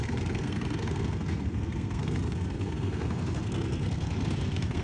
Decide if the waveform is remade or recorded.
remade